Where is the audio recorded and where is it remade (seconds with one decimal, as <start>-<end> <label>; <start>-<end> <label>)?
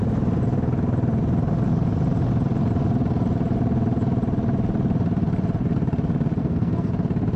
0.0-6.4 recorded; 6.4-6.9 remade; 6.9-7.4 recorded